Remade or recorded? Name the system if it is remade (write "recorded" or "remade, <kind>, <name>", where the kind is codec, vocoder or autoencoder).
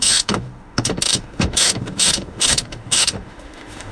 remade, autoencoder, DAC-VAE